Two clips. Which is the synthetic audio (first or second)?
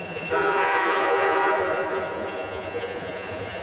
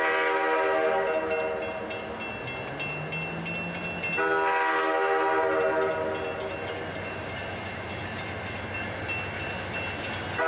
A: first